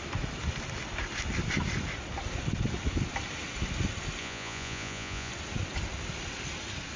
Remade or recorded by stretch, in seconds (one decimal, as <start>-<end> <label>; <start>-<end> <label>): 0.0-4.2 recorded; 4.2-5.3 remade; 5.3-7.0 recorded